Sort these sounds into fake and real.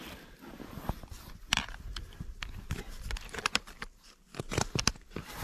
fake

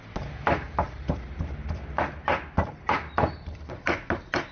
real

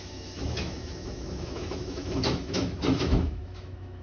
fake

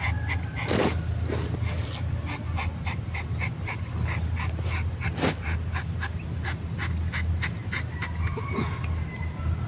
real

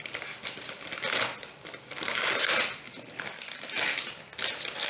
real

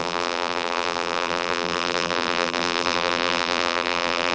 fake